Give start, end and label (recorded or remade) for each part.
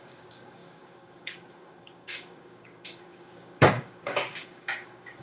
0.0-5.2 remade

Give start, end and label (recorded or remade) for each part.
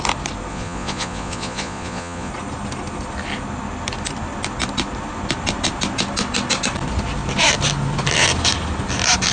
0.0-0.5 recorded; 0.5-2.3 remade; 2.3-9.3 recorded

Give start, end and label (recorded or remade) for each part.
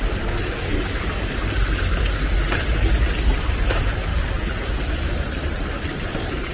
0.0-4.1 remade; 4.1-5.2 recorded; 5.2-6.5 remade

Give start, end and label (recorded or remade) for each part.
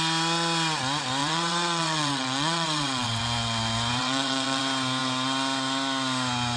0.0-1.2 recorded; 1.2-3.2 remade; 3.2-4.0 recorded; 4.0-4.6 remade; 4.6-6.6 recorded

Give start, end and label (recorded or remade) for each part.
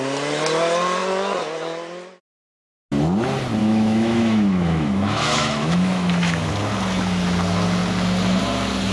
0.0-3.6 recorded; 3.6-6.5 remade; 6.5-8.9 recorded